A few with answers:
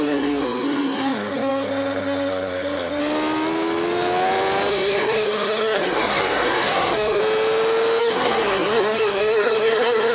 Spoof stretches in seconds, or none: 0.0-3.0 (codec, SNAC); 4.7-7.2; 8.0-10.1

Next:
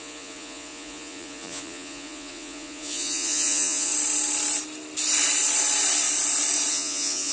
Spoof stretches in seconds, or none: 0.0-3.9 (vocoder, Vocos); 6.7-7.3

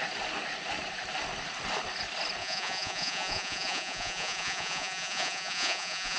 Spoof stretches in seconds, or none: 2.4-6.2 (vocoder, Vocos)

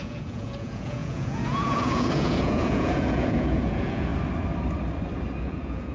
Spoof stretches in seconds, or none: 0.0-4.1 (vocoder, Vocos); 5.4-5.9

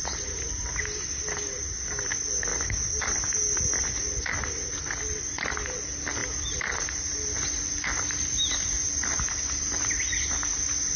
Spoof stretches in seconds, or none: none